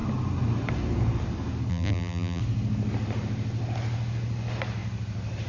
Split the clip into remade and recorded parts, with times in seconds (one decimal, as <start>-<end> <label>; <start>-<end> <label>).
0.0-1.7 recorded; 1.7-2.4 remade; 2.4-5.5 recorded

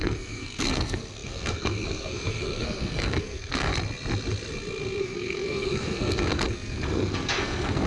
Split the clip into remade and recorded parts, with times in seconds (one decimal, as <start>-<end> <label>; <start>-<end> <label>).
0.0-3.7 remade; 3.7-5.0 recorded; 5.0-7.9 remade

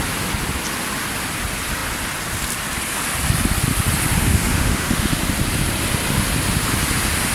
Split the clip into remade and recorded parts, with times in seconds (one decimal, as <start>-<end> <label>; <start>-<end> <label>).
0.0-4.2 recorded; 4.2-5.2 remade; 5.2-7.3 recorded

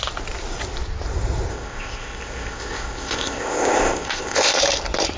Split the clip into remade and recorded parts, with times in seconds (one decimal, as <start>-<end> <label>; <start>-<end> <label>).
0.0-1.5 recorded; 1.5-4.6 remade; 4.6-5.2 recorded